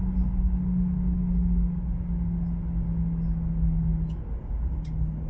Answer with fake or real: real